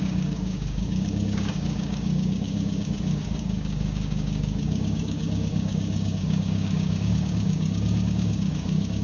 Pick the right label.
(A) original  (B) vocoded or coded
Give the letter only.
B